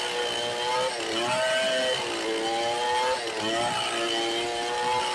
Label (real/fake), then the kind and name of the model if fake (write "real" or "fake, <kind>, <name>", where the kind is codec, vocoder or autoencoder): real